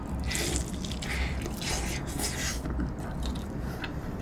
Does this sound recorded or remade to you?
recorded